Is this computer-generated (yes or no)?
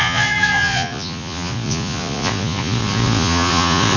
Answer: yes